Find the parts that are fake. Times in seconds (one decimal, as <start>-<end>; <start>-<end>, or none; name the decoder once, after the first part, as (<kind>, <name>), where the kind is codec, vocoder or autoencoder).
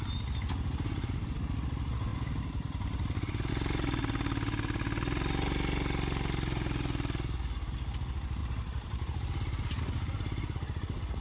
2.1-3.5 (vocoder, BigVGAN v2); 8.4-9.8